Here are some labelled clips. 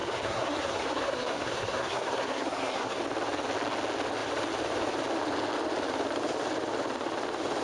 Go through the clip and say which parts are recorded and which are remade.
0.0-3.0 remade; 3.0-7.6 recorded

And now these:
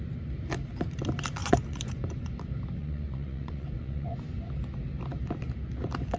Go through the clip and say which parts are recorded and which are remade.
0.0-1.4 recorded; 1.4-2.3 remade; 2.3-2.8 recorded; 2.8-4.2 remade; 4.2-6.2 recorded

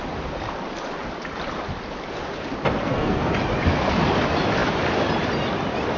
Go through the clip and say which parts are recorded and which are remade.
0.0-2.8 recorded; 2.8-3.3 remade; 3.3-6.0 recorded

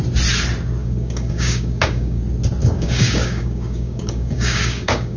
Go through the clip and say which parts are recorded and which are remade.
0.0-0.8 recorded; 0.8-2.2 remade; 2.2-2.6 recorded; 2.6-5.2 remade

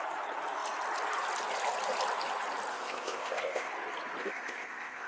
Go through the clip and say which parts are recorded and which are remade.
0.0-2.7 recorded; 2.7-3.7 remade; 3.7-4.2 recorded; 4.2-5.1 remade